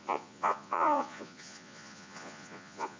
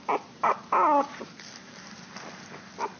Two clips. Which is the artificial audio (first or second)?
first